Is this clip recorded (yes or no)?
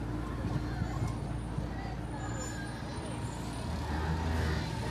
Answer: yes